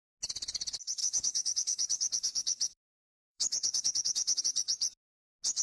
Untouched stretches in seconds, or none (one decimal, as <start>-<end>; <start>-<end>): 0.0-1.0; 4.4-5.6